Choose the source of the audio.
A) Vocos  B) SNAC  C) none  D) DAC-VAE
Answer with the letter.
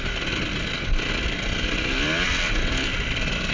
C